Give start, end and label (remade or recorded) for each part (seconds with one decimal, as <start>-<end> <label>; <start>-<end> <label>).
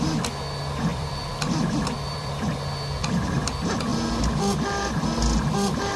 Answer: 0.0-0.9 recorded; 0.9-2.3 remade; 2.3-3.0 recorded; 3.0-3.5 remade; 3.5-6.0 recorded